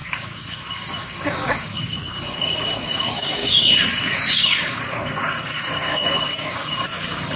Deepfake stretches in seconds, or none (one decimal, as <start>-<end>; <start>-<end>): 0.0-7.4